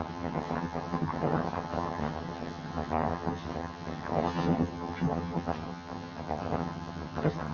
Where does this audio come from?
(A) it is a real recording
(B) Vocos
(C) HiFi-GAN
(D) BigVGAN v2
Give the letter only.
C